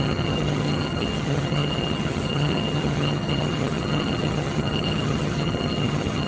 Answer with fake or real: fake